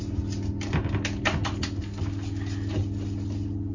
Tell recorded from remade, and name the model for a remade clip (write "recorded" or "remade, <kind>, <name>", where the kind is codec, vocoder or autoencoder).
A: recorded